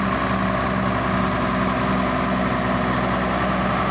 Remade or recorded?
recorded